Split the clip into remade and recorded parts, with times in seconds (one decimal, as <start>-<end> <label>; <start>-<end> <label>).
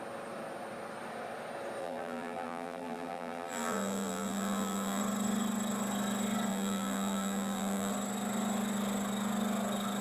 0.0-1.8 recorded; 1.8-5.0 remade; 5.0-6.5 recorded; 6.5-7.9 remade; 7.9-10.0 recorded